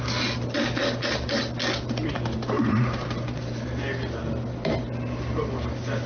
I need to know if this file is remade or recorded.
recorded